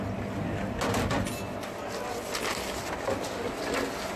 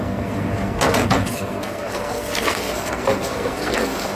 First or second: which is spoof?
second